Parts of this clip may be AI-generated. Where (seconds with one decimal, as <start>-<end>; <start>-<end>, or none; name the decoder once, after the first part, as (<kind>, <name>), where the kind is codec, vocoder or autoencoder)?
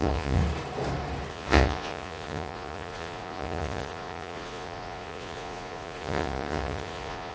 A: 0.0-0.4 (vocoder, Vocos); 1.3-7.3